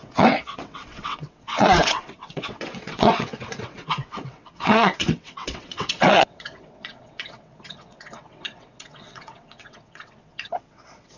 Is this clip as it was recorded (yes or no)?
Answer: no